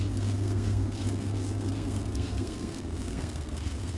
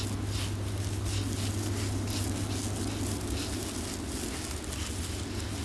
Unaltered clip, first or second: second